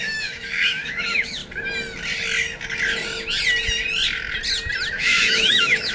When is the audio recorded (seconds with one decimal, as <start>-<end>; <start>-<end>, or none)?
1.4-4.9